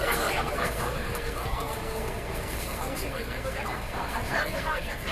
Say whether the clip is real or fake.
fake